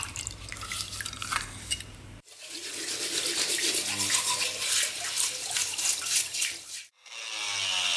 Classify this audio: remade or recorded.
recorded